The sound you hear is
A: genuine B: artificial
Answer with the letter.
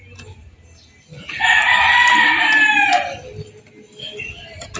A